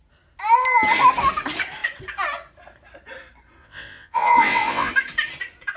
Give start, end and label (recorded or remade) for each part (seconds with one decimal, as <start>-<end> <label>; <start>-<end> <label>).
0.0-3.6 recorded; 3.6-4.9 remade; 4.9-5.8 recorded